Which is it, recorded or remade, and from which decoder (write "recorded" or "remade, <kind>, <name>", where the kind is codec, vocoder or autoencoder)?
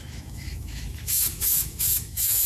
remade, autoencoder, DAC-VAE